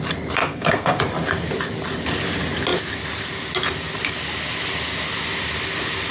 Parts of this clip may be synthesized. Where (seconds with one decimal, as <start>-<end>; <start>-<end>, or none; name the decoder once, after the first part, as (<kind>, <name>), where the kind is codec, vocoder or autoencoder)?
0.4-1.0 (codec, SNAC)